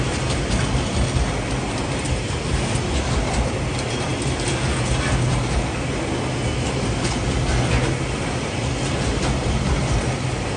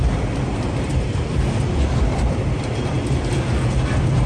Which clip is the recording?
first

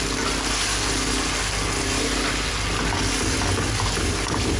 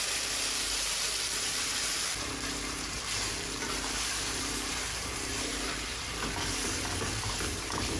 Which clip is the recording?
first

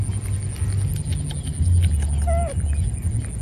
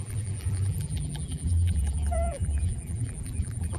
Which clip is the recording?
first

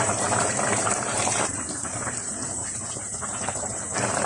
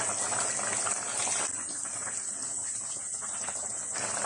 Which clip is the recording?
second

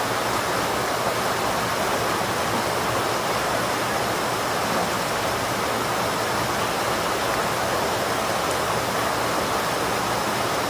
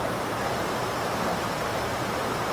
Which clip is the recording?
first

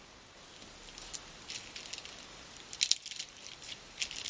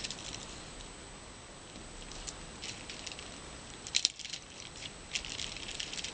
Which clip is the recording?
first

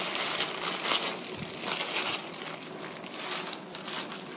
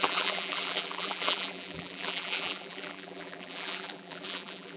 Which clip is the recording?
first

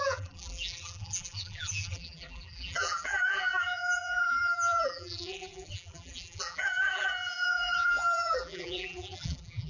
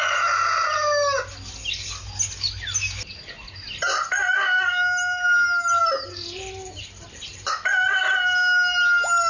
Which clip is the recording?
second